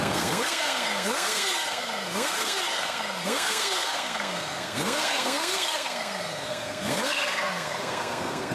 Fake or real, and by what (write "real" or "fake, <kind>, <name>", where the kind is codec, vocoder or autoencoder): fake, codec, SNAC